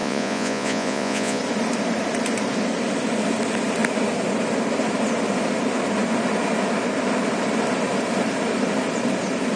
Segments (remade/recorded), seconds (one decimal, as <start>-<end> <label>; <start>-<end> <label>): 0.0-1.4 remade; 1.4-9.6 recorded